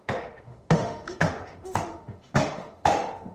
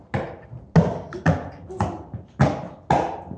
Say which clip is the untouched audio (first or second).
second